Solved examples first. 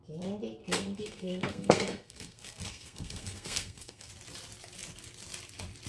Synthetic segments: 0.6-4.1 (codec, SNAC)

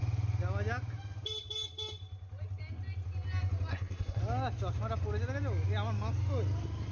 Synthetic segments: 3.7-4.2 (codec, SNAC)

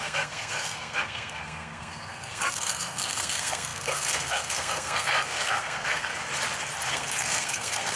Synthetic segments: 0.0-6.1 (codec, SNAC); 6.9-8.0

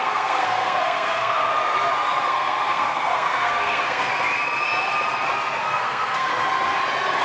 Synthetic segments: 0.0-1.4 (codec, SNAC); 2.2-4.1; 5.6-6.3

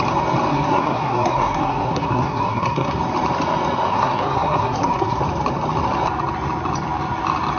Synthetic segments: 0.5-3.0 (codec, SNAC); 3.9-5.2

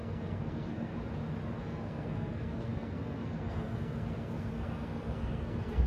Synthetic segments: 0.0-0.9 (codec, SNAC); 1.6-5.9

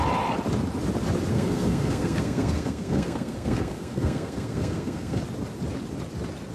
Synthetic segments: 1.3-5.2 (codec, SNAC)